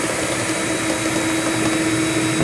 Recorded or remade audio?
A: recorded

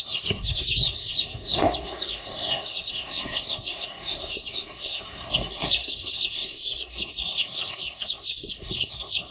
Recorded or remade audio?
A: remade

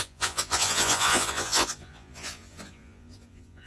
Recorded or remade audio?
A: remade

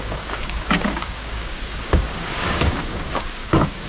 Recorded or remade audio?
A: remade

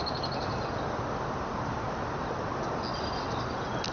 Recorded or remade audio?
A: recorded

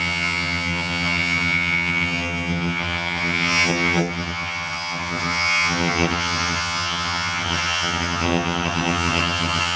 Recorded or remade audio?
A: remade